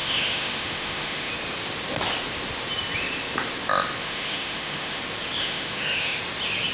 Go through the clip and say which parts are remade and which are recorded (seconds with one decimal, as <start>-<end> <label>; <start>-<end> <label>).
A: 0.0-1.3 remade; 1.3-4.0 recorded; 4.0-5.0 remade; 5.0-5.4 recorded; 5.4-6.2 remade; 6.2-6.7 recorded